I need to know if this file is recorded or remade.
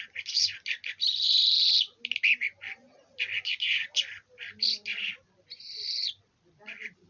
recorded